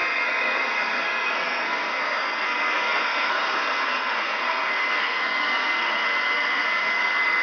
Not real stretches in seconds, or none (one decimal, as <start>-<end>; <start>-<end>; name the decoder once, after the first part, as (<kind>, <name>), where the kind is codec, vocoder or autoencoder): 0.0-7.4 (codec, SNAC)